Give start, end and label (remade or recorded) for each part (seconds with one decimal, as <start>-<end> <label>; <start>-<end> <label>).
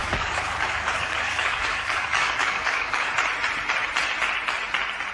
0.0-3.1 remade; 3.1-5.1 recorded